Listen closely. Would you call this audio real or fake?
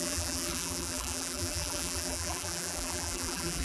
fake